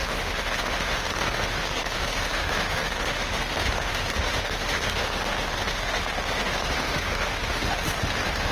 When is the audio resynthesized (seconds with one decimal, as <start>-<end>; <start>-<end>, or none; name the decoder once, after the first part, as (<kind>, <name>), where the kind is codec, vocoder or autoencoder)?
0.0-8.5 (autoencoder, DAC-VAE)